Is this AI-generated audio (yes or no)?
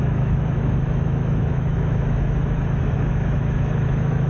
yes